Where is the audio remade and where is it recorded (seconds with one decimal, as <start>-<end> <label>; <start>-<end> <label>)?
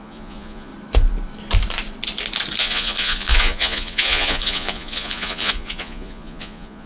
0.0-0.7 remade; 0.7-2.6 recorded; 2.6-6.9 remade